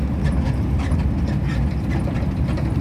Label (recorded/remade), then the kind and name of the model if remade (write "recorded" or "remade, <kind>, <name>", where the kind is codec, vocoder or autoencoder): recorded